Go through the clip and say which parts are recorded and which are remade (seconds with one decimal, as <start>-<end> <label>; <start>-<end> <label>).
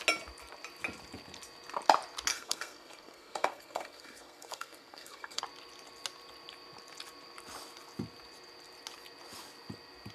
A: 0.0-2.3 recorded; 2.3-5.4 remade; 5.4-10.1 recorded